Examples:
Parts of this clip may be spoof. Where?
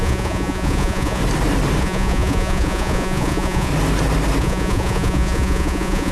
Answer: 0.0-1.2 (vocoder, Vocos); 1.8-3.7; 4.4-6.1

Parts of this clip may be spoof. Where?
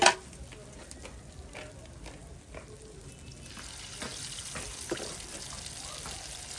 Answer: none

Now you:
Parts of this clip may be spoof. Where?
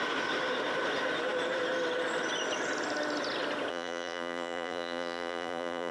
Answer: 3.7-5.9 (vocoder, BigVGAN v2)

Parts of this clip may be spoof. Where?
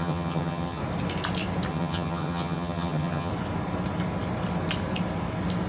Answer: 0.0-0.8 (vocoder, HiFi-GAN); 1.7-3.3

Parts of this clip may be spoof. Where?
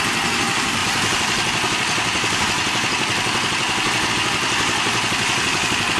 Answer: none